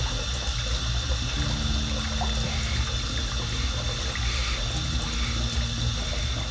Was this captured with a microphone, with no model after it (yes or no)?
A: yes